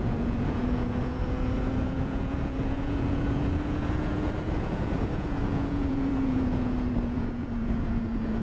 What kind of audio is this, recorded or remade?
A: remade